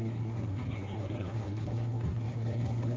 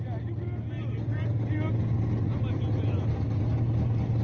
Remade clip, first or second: first